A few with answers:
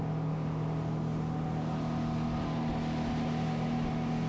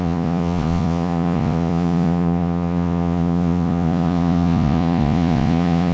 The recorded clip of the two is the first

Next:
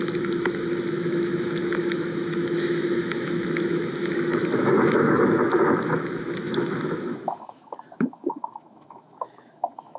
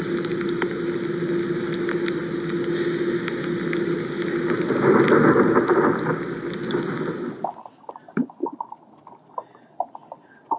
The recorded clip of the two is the second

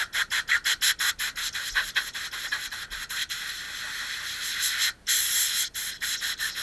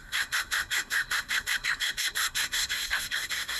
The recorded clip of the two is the first